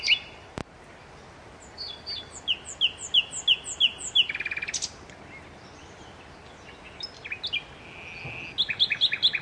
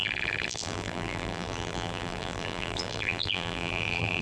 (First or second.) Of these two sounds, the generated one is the second